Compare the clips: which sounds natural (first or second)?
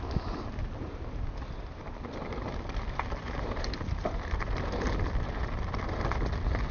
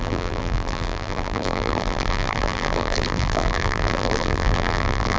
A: first